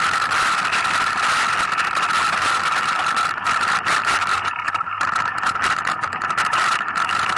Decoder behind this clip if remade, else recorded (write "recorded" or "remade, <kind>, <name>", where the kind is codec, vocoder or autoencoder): recorded